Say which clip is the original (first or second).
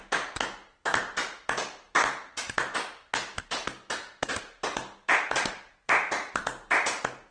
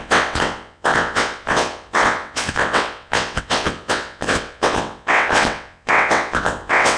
first